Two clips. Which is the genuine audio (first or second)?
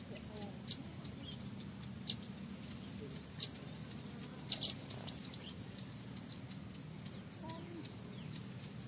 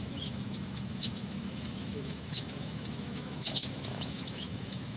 first